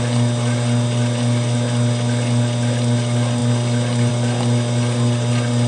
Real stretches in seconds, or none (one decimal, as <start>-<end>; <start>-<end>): 0.0-5.7